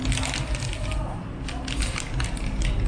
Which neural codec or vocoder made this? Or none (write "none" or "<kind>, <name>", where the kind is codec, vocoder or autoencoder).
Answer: none